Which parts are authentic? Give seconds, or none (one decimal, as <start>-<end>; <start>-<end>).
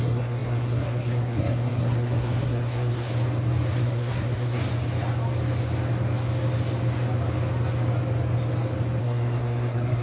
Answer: 3.1-3.8; 4.6-9.0